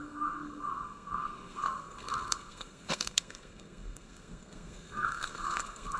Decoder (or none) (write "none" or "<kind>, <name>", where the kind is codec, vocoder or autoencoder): codec, SNAC